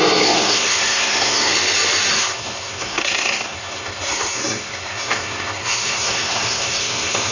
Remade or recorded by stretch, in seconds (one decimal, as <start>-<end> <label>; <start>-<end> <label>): 0.0-1.5 remade; 1.5-2.1 recorded; 2.1-7.3 remade